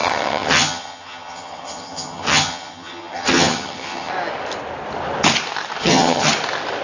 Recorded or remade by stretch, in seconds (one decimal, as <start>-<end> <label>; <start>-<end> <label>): 0.0-4.1 remade; 4.1-5.8 recorded; 5.8-6.3 remade; 6.3-6.8 recorded